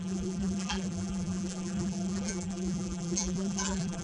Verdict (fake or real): fake